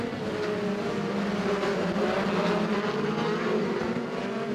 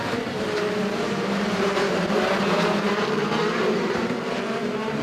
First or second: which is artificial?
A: second